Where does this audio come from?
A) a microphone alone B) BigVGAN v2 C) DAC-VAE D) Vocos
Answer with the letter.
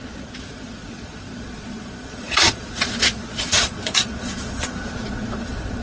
D